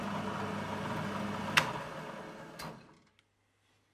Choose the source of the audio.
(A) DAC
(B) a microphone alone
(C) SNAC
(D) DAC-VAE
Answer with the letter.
B